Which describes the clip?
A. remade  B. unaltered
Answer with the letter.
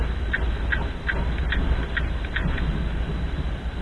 B